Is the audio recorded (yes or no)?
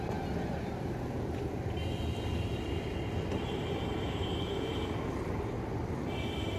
yes